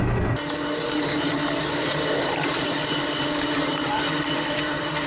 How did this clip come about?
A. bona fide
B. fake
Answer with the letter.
B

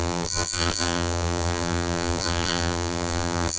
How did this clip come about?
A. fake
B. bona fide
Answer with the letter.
A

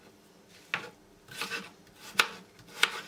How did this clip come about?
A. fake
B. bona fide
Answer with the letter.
B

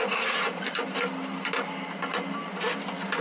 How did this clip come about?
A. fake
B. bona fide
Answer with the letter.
B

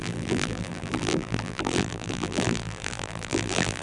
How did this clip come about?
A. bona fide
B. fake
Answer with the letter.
B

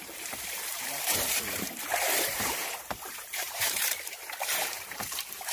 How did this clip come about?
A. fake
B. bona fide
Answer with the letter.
A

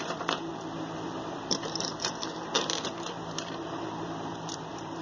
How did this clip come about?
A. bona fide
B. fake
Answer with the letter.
B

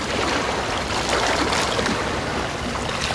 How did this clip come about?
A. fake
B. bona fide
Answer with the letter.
B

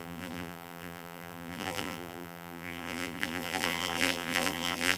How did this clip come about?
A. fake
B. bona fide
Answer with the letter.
A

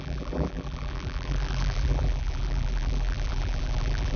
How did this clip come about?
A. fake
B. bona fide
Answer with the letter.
A